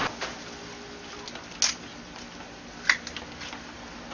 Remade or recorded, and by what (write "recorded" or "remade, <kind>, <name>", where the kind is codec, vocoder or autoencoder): recorded